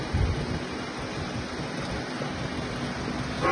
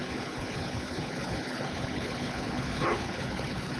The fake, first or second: second